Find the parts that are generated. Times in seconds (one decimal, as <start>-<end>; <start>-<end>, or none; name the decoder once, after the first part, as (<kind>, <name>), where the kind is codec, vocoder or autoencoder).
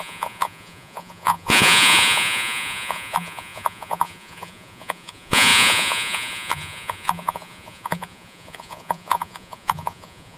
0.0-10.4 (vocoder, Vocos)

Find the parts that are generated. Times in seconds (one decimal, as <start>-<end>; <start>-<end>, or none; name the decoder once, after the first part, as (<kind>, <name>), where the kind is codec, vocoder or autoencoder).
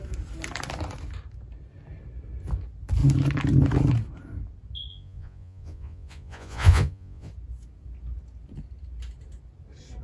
4.9-7.3 (vocoder, Vocos)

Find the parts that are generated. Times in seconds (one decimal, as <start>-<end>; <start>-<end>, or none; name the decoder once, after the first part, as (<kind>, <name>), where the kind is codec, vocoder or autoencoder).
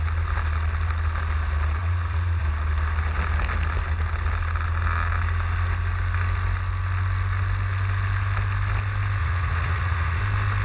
1.8-2.4 (vocoder, Vocos); 9.2-10.2